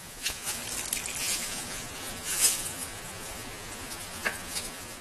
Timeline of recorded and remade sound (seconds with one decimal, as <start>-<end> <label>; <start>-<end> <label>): 0.0-0.6 remade; 0.6-1.2 recorded; 1.2-5.0 remade